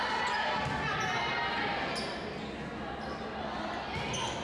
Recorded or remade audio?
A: recorded